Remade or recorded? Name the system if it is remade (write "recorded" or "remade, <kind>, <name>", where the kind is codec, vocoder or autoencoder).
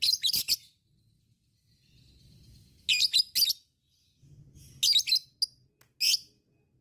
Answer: recorded